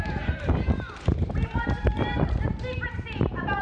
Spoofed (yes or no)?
yes